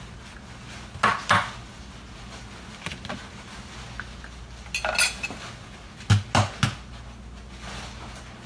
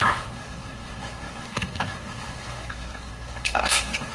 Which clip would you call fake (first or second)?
second